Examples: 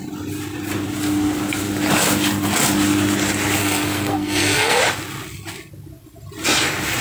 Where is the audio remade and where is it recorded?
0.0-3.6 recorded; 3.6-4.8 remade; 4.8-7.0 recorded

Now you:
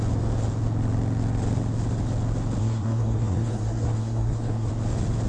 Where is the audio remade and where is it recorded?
0.0-2.6 recorded; 2.6-4.7 remade; 4.7-5.3 recorded

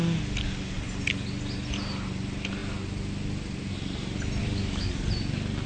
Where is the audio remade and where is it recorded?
0.0-4.4 recorded; 4.4-5.0 remade; 5.0-5.7 recorded

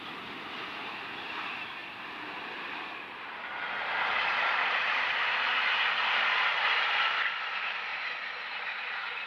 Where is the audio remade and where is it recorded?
0.0-1.8 recorded; 1.8-5.4 remade; 5.4-9.3 recorded

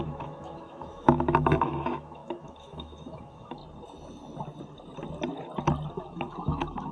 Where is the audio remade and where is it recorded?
0.0-3.6 remade; 3.6-5.9 recorded; 5.9-6.9 remade

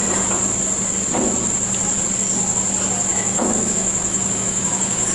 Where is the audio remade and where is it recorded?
0.0-3.1 recorded; 3.1-5.1 remade